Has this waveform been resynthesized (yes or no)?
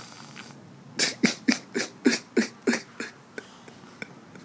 no